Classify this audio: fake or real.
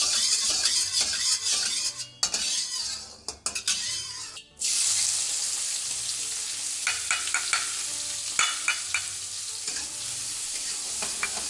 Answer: real